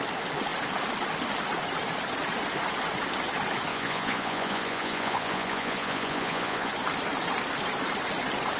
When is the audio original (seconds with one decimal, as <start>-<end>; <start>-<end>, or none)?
0.0-3.7; 6.7-8.6